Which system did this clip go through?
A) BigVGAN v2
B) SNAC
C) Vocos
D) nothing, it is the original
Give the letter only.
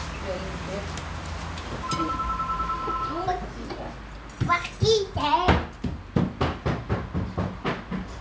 D